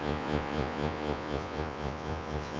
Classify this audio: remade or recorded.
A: remade